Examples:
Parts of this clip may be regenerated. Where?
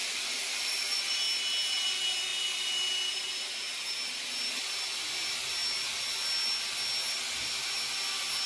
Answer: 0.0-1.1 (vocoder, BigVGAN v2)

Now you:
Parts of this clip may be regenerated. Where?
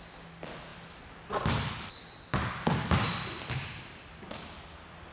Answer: none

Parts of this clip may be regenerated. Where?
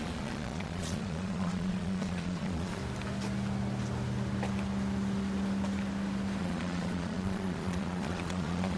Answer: 0.0-2.8 (vocoder, Vocos); 6.4-8.8